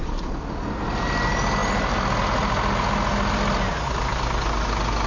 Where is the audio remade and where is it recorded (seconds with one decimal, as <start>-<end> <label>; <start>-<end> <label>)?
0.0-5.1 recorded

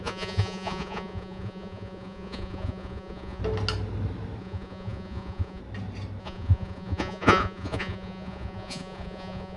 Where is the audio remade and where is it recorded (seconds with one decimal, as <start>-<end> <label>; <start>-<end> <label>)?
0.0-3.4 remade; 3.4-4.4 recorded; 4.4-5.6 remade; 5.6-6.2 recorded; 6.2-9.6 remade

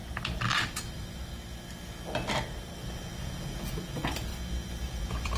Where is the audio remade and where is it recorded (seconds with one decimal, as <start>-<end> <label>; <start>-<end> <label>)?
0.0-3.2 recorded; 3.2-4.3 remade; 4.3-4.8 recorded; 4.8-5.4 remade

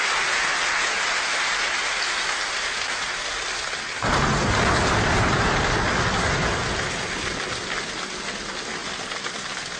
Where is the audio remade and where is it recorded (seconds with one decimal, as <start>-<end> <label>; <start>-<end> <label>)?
0.0-9.8 recorded

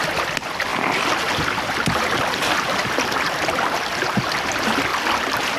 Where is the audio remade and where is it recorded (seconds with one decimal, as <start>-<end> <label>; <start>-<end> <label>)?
0.0-5.6 recorded

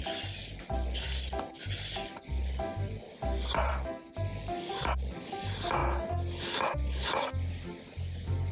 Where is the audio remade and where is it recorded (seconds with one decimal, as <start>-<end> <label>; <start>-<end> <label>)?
0.0-8.5 recorded

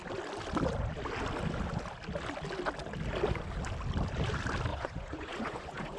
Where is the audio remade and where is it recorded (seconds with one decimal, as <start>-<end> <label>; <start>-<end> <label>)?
0.0-4.7 recorded; 4.7-6.0 remade

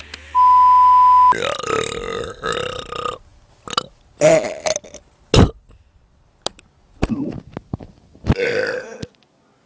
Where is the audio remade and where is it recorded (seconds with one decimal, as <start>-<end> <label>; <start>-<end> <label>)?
0.0-9.7 recorded